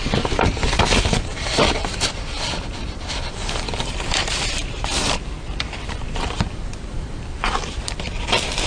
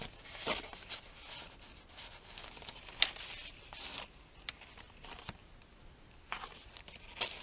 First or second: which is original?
second